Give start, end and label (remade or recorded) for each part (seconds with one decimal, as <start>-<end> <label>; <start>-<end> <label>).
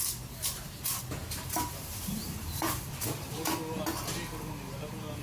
0.0-1.2 recorded; 1.2-3.5 remade; 3.5-5.2 recorded